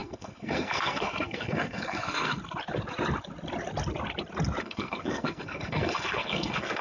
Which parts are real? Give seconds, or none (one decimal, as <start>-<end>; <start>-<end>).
2.4-4.6